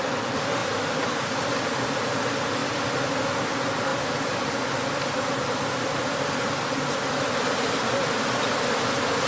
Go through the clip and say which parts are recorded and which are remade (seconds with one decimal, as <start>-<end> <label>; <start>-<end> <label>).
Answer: 0.0-9.3 recorded